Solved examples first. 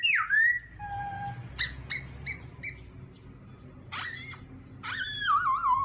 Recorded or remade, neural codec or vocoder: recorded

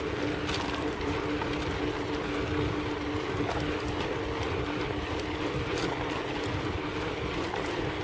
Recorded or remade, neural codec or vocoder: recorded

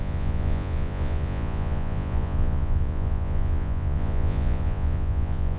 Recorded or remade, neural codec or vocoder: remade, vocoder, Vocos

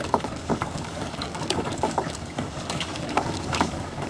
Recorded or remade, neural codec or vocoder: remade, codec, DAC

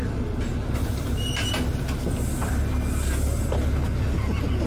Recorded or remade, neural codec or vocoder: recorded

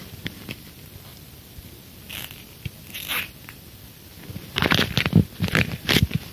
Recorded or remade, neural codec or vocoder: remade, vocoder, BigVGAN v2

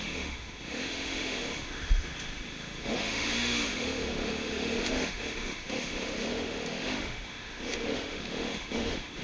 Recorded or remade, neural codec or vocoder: remade, autoencoder, DAC-VAE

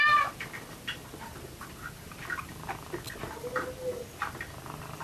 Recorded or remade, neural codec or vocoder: recorded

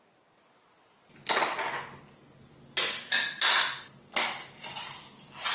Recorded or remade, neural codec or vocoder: recorded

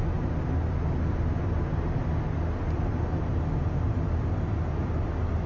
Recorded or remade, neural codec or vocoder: recorded